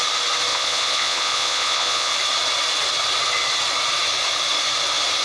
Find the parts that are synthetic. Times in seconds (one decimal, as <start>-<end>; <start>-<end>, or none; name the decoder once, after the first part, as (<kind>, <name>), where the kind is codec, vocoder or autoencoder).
0.5-2.1 (vocoder, Vocos)

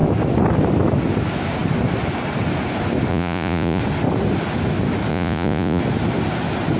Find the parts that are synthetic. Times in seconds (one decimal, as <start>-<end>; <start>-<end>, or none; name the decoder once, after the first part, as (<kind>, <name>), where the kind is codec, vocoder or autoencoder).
3.1-3.8 (vocoder, Vocos); 5.1-5.8

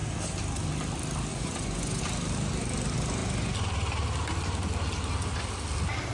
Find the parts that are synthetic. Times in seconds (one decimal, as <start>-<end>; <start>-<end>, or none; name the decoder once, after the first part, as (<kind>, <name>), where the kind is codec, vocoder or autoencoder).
1.3-2.0 (vocoder, Vocos)

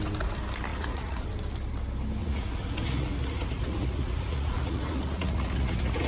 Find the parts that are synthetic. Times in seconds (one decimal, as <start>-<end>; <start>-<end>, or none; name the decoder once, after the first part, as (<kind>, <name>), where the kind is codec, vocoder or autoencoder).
0.7-1.2 (vocoder, Vocos); 2.2-6.1

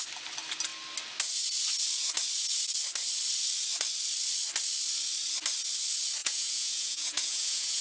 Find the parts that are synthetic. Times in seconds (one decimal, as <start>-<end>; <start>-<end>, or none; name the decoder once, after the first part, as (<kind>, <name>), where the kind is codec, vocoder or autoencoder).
6.2-7.8 (vocoder, Vocos)

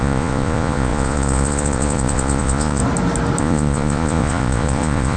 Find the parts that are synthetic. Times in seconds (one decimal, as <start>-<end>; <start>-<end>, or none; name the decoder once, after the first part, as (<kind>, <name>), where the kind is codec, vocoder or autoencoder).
0.0-2.8 (vocoder, Vocos); 3.4-5.2

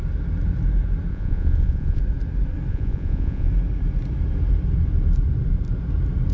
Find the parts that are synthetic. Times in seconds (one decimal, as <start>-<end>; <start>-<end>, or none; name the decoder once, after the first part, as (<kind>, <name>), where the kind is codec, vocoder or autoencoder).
1.1-2.0 (vocoder, Vocos); 2.7-3.5

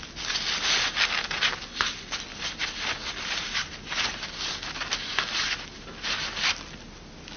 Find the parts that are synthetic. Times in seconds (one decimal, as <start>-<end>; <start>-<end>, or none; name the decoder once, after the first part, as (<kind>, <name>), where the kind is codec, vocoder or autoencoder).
none